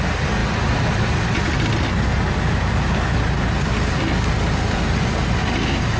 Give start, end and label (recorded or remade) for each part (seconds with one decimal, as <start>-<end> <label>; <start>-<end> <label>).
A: 0.0-6.0 recorded